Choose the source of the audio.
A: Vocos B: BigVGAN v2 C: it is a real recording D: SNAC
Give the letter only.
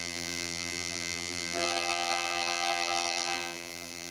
B